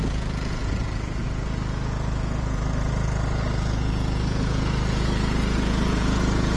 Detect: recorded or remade remade